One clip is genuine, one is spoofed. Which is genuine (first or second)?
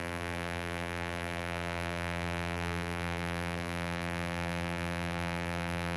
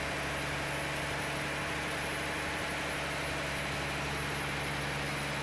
second